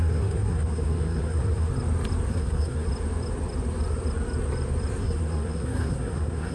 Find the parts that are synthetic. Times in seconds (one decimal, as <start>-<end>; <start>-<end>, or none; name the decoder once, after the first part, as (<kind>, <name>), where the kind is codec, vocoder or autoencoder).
0.0-1.7 (codec, SNAC); 2.3-2.9; 5.0-6.5